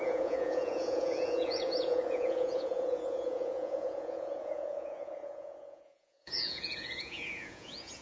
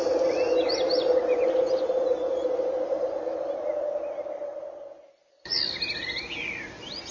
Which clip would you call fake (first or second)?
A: first